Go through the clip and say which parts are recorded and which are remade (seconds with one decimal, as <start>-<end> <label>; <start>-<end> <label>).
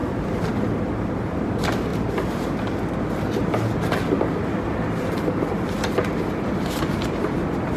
0.0-7.8 recorded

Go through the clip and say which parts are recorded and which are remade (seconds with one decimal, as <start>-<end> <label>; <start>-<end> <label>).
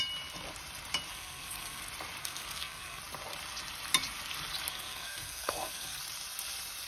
0.0-1.1 recorded; 1.1-1.8 remade; 1.8-2.2 recorded; 2.2-3.0 remade; 3.0-4.7 recorded; 4.7-6.0 remade; 6.0-6.9 recorded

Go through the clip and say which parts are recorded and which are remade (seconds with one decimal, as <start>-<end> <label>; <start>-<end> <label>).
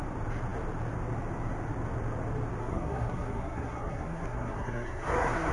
0.0-2.6 recorded; 2.6-5.5 remade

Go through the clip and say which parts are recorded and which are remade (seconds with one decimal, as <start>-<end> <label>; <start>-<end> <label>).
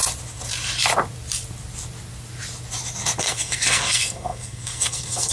0.0-3.2 recorded; 3.2-5.3 remade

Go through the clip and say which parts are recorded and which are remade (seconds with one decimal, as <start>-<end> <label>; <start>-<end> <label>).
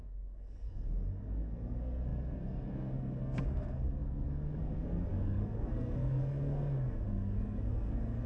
0.0-8.3 remade